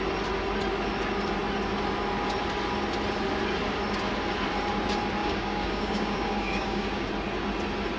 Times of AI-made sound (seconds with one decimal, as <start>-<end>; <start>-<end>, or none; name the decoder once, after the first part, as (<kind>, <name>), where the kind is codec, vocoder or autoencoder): 5.2-7.1 (codec, DAC)